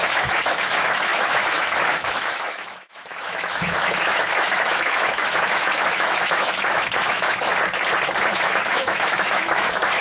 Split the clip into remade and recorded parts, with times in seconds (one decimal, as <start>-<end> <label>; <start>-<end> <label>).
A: 0.0-7.5 remade; 7.5-8.3 recorded; 8.3-10.0 remade